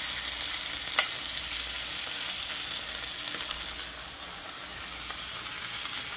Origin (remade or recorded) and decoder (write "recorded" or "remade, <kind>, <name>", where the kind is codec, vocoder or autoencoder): recorded